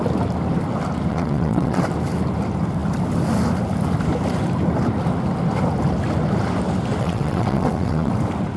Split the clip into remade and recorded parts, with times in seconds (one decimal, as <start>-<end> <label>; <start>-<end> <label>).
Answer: 0.0-1.1 recorded; 1.1-1.8 remade; 1.8-7.0 recorded; 7.0-8.1 remade; 8.1-8.6 recorded